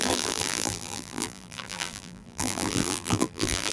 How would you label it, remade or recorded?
remade